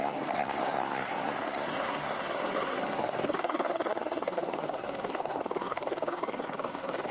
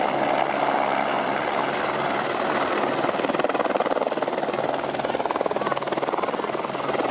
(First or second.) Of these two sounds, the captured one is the second